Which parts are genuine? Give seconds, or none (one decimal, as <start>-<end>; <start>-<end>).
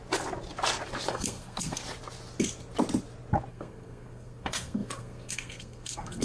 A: 0.0-1.1; 1.8-3.5